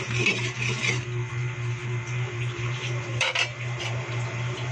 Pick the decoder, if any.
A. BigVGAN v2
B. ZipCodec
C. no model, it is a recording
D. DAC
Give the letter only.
A